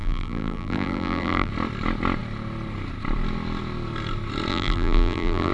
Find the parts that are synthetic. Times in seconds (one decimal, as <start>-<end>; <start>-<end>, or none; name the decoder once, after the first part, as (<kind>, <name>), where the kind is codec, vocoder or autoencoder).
0.0-1.5 (vocoder, BigVGAN v2); 4.5-5.5